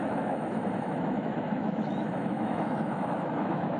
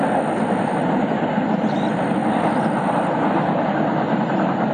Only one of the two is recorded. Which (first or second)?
second